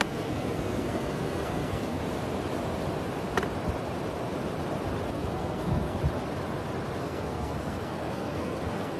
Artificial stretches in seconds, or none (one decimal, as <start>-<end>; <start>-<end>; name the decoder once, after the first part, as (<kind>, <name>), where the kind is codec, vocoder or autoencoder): 0.0-2.0 (codec, SNAC); 5.1-6.0; 7.0-9.0